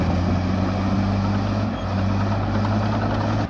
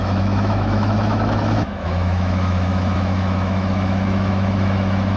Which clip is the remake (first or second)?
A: second